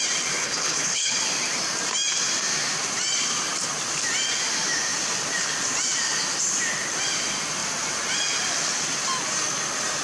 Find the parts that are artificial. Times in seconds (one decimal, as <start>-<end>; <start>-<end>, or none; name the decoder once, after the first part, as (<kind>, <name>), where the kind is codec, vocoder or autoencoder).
0.4-1.1 (codec, HILCodec)